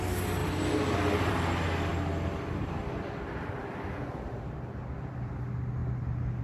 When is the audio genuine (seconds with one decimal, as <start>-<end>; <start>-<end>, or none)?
0.0-6.4

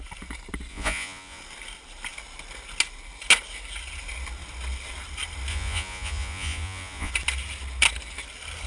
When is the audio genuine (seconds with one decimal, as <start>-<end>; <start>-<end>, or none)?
0.0-0.7; 1.4-5.5; 7.1-8.7

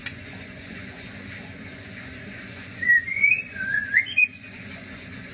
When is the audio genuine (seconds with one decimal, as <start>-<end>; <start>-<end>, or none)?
none

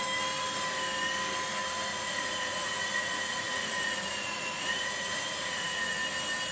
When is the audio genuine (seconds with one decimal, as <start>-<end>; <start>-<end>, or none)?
0.0-1.9; 5.8-6.5

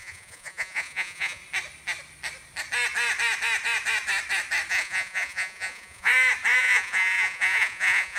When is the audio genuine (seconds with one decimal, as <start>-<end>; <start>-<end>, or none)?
1.4-4.7; 6.1-6.6

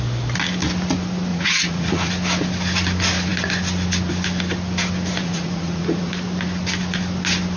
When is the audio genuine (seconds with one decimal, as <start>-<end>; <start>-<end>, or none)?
0.0-1.3; 2.1-5.2; 6.1-7.6

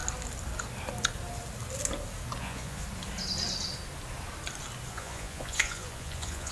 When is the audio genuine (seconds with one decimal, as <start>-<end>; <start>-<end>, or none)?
0.0-2.4; 2.8-4.9